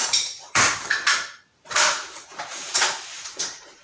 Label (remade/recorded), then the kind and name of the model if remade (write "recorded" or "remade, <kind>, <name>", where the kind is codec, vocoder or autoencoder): remade, vocoder, BigVGAN v2